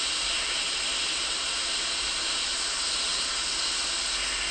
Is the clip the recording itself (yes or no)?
yes